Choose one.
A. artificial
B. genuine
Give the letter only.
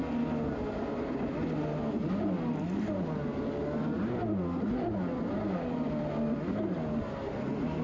B